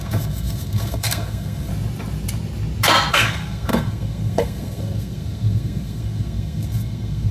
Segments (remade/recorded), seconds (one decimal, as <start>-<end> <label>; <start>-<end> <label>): 0.0-1.7 remade; 1.7-3.1 recorded; 3.1-7.3 remade